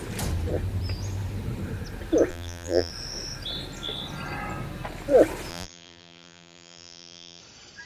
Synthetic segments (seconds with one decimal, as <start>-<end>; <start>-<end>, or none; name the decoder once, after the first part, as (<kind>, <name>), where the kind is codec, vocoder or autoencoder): 2.3-2.9 (vocoder, BigVGAN v2); 5.5-7.4